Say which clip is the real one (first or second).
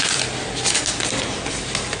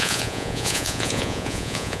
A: first